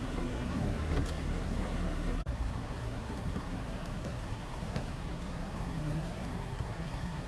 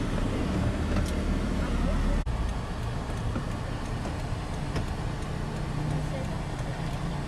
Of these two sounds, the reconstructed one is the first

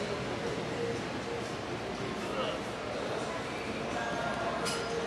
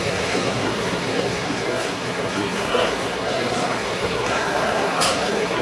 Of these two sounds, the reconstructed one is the second